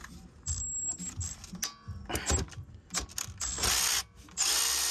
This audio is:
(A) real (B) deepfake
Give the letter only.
A